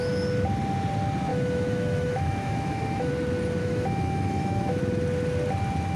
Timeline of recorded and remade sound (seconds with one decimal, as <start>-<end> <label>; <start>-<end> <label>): 0.0-1.3 recorded; 1.3-3.1 remade; 3.1-3.6 recorded; 3.6-4.8 remade; 4.8-6.0 recorded